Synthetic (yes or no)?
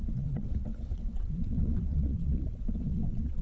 yes